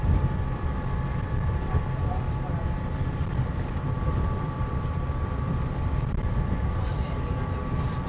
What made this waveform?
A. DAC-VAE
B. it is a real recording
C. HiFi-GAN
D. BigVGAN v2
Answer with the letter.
D